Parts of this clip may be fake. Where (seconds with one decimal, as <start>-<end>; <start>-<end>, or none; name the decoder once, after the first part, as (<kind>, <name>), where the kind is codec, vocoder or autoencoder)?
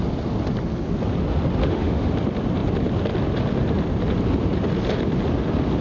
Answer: 1.6-2.1 (autoencoder, DAC-VAE)